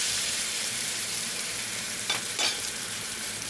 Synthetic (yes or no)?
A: yes